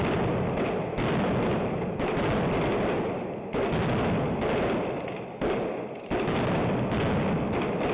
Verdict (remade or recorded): remade